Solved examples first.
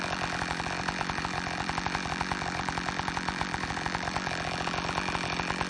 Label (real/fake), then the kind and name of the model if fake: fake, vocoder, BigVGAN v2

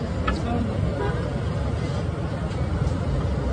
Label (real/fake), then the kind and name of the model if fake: real